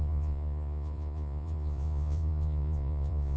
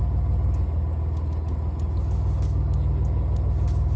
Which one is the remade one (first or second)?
first